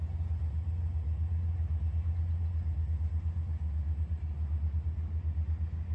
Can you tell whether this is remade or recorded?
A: recorded